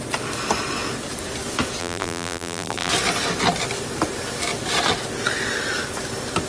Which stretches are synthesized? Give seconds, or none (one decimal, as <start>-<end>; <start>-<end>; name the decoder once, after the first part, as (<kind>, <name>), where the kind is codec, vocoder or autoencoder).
1.8-2.9 (vocoder, BigVGAN v2)